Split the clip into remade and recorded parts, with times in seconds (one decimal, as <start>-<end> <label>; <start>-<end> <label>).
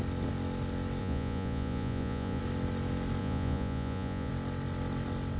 0.0-1.0 recorded; 1.0-2.4 remade; 2.4-3.2 recorded; 3.2-4.3 remade; 4.3-5.4 recorded